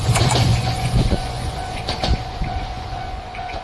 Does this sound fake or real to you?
fake